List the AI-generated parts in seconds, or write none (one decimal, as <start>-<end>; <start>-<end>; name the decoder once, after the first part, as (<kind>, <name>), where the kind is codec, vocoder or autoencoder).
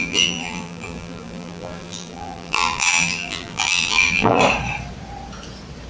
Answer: 0.0-4.4 (vocoder, BigVGAN v2)